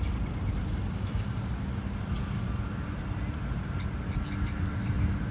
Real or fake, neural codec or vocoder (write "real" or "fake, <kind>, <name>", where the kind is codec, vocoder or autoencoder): real